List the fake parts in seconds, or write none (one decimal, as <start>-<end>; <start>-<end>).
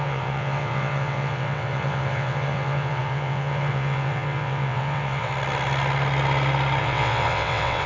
0.0-5.3; 6.8-7.9